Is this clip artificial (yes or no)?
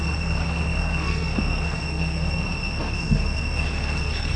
yes